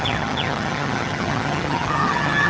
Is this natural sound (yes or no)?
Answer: no